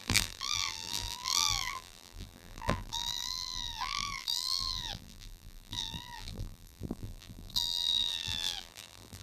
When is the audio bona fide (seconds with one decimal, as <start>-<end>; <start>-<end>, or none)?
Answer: none